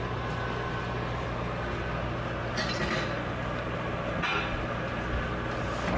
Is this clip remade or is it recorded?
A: recorded